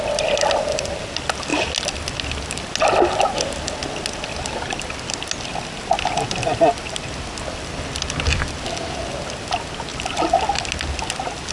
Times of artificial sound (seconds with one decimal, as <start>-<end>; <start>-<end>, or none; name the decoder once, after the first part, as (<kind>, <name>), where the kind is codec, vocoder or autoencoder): none